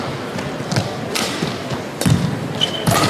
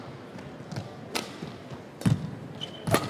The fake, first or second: first